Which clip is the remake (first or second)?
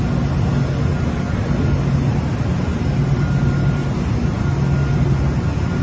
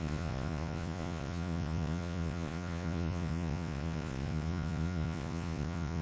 second